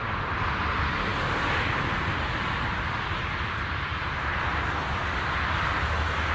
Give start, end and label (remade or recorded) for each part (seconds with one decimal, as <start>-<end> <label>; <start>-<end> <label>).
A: 0.0-6.3 recorded